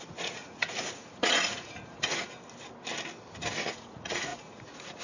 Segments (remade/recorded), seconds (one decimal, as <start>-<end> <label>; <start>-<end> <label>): 0.0-2.3 remade; 2.3-3.7 recorded; 3.7-5.0 remade